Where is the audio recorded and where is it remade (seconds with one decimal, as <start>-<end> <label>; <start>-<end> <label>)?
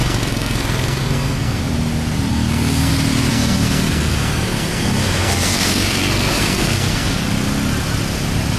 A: 0.0-1.6 remade; 1.6-2.3 recorded; 2.3-2.9 remade; 2.9-3.3 recorded; 3.3-7.2 remade; 7.2-8.6 recorded